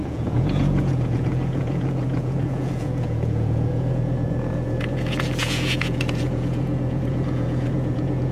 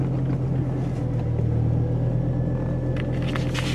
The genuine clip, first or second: second